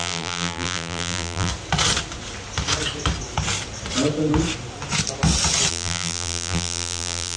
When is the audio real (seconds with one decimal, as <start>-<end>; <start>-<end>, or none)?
1.5-5.7

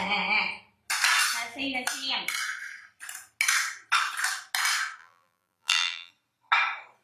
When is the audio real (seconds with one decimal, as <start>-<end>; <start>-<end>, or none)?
0.0-5.0; 6.1-7.0